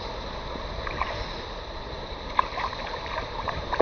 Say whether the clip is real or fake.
fake